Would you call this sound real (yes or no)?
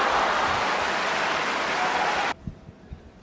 yes